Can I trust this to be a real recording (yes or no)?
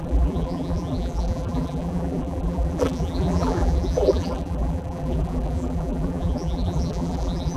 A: no